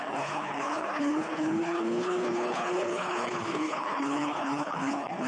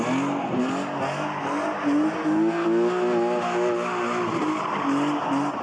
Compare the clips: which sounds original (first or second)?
second